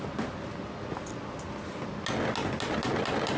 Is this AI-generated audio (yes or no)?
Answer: no